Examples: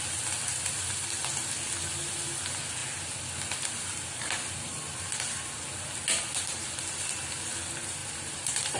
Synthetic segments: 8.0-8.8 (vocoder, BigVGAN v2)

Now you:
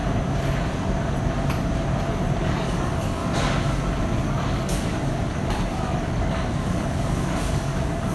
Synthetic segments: 2.4-3.2 (codec, DAC); 4.2-8.1